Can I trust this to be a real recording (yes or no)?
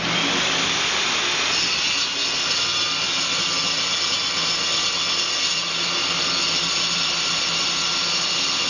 yes